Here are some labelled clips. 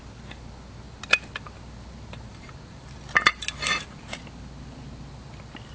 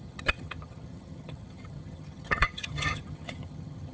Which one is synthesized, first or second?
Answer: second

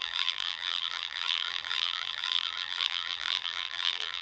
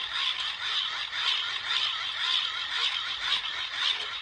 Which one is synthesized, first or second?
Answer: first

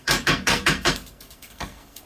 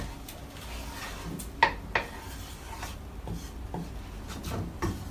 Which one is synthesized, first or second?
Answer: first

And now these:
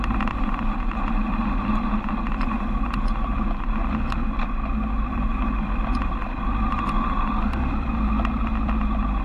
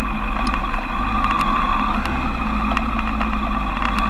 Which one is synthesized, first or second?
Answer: first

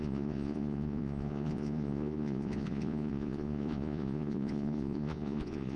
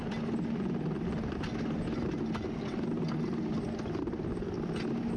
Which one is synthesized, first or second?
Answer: first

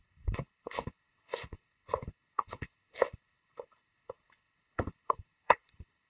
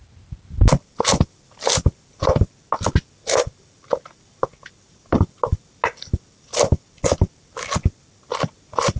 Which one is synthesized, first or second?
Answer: first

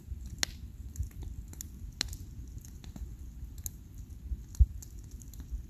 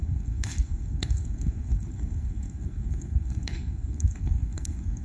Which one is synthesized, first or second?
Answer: second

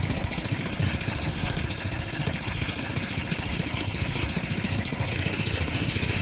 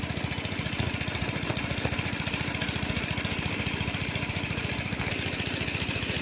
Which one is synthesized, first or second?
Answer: first